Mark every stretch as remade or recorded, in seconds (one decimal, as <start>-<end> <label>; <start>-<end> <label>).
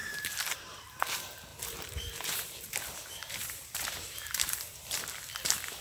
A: 0.0-1.0 remade; 1.0-1.5 recorded; 1.5-5.0 remade; 5.0-5.8 recorded